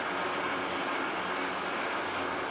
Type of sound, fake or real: real